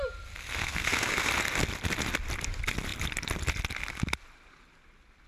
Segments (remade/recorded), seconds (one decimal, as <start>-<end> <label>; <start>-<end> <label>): 0.0-0.6 recorded; 0.6-1.3 remade; 1.3-5.3 recorded

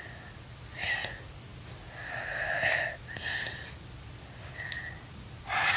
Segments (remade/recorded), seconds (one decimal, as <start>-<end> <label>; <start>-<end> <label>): 0.0-5.8 recorded

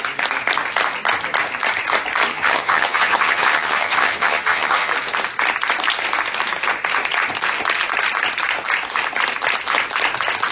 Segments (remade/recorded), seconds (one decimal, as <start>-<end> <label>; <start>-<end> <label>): 0.0-2.3 recorded; 2.3-4.9 remade; 4.9-10.5 recorded

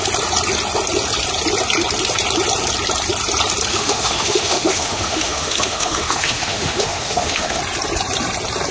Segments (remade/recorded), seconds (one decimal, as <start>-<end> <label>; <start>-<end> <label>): 0.0-3.7 recorded; 3.7-7.6 remade; 7.6-8.7 recorded

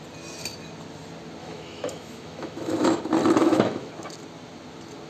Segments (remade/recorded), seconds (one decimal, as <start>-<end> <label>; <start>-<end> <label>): 0.0-1.4 recorded; 1.4-3.0 remade; 3.0-3.4 recorded; 3.4-3.9 remade; 3.9-5.1 recorded